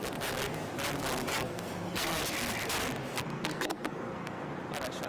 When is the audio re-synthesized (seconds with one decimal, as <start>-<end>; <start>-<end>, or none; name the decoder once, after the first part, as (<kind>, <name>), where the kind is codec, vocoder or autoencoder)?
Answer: 1.3-2.2 (codec, SNAC); 3.1-4.5